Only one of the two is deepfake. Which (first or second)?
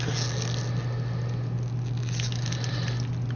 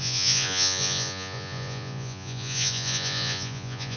second